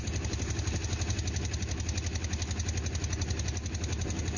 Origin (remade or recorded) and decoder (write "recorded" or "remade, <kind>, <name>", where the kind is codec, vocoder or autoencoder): recorded